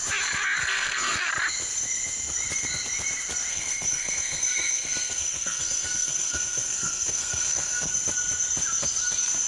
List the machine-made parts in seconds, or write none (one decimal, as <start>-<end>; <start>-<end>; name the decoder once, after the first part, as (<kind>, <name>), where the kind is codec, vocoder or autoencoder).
0.6-1.3 (codec, SNAC); 3.5-7.9